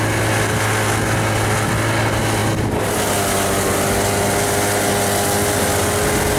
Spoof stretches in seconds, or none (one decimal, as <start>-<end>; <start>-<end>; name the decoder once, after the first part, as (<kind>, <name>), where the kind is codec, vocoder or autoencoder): none